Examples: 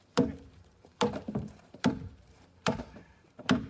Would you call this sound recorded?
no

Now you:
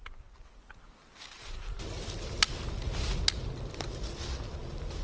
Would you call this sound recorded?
yes